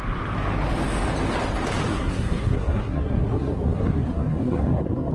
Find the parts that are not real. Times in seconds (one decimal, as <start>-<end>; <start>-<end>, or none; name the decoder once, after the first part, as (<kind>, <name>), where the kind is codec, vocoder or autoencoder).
1.9-5.1 (codec, SNAC)

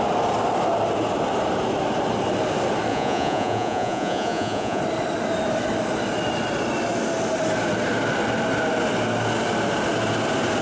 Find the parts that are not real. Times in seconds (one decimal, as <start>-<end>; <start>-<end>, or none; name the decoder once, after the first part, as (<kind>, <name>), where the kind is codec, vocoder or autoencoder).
2.9-4.8 (vocoder, Vocos)

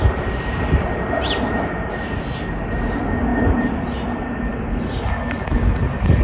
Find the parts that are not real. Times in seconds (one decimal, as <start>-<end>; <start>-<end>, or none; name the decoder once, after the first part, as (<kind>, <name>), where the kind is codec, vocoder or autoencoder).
3.3-3.8 (vocoder, BigVGAN v2)

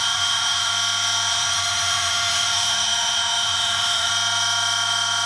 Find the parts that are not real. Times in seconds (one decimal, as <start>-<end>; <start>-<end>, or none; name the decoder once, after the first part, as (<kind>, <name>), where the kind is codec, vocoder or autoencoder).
0.0-0.7 (autoencoder, DAC-VAE); 1.3-4.1

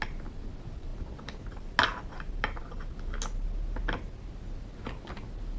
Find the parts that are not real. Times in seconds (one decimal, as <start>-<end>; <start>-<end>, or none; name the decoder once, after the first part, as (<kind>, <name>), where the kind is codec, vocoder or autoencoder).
none

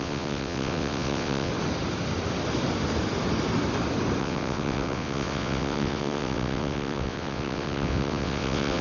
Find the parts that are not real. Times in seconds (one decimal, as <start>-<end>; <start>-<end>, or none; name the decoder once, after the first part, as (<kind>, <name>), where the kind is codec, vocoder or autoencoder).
0.0-1.5 (vocoder, WaveNeXt); 4.2-8.8